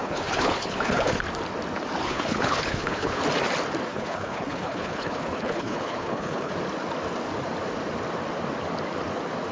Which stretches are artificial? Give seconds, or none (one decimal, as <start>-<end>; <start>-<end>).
0.0-1.2; 2.1-3.2; 3.9-6.5